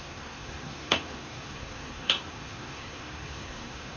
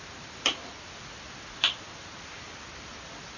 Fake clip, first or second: first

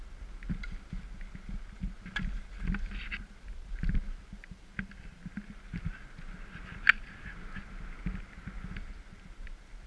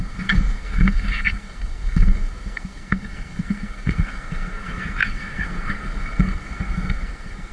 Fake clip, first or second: second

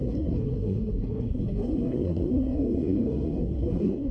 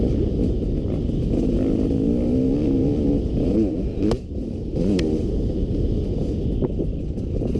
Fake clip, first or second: first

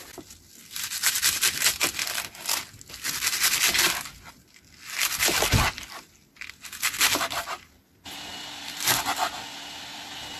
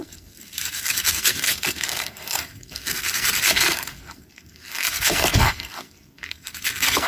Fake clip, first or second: second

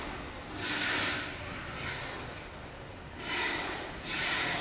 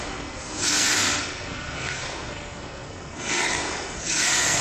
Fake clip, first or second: second